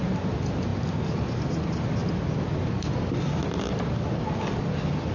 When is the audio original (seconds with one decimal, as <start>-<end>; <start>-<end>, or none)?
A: 0.0-5.1